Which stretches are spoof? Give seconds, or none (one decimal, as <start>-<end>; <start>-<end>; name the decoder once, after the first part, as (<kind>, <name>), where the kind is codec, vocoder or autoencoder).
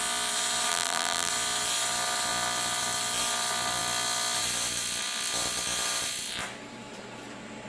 0.7-1.3 (vocoder, BigVGAN v2)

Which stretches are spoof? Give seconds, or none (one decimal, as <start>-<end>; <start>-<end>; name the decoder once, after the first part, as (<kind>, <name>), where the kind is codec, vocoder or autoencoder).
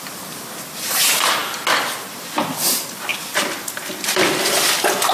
3.1-3.7 (vocoder, BigVGAN v2)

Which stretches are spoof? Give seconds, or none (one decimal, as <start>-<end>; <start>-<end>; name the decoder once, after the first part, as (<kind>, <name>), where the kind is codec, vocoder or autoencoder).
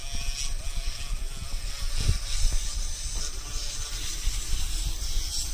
3.2-5.5 (vocoder, BigVGAN v2)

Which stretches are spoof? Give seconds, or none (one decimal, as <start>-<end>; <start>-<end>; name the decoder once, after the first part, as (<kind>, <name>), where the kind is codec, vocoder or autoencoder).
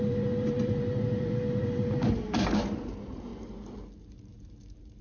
0.0-3.3 (vocoder, BigVGAN v2); 4.0-5.0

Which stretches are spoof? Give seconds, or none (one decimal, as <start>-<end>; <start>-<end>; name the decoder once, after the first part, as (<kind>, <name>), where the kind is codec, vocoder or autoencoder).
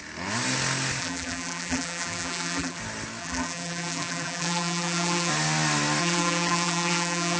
1.0-2.8 (vocoder, BigVGAN v2); 3.2-5.3; 6.0-7.4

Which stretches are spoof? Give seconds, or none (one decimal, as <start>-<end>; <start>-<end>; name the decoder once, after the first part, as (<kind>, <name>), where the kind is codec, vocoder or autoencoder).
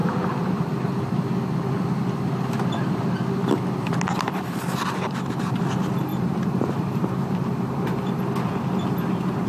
0.0-1.0 (vocoder, BigVGAN v2); 4.1-5.5; 6.1-8.2